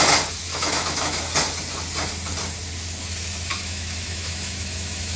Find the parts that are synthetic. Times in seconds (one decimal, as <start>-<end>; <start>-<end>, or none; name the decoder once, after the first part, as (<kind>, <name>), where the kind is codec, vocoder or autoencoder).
0.5-1.2 (autoencoder, DAC-VAE); 3.5-5.2